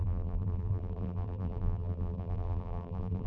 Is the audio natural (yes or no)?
no